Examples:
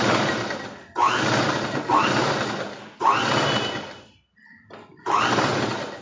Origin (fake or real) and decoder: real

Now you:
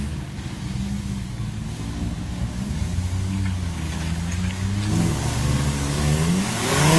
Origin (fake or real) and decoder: fake, codec, DAC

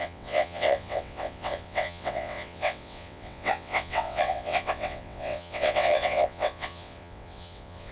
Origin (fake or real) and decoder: fake, vocoder, WaveNeXt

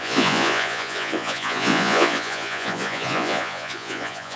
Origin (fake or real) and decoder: fake, vocoder, Vocos